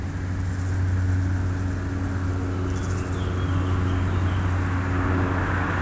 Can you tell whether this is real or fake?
real